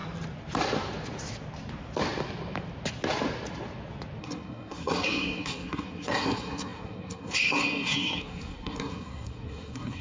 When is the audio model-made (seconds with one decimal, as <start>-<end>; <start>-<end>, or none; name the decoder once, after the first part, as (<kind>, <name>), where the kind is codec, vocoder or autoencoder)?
4.2-10.0 (codec, SNAC)